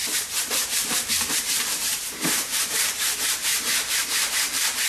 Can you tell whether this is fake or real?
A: fake